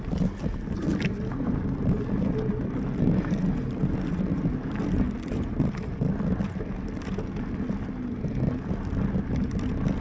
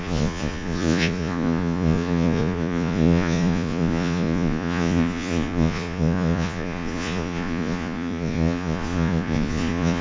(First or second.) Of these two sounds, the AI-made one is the second